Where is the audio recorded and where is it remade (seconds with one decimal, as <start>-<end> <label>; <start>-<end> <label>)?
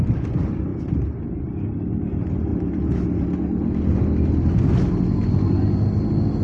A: 0.0-6.4 recorded